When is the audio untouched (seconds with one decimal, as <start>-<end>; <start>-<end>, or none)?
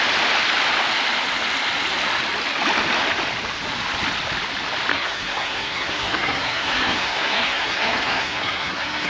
0.0-4.9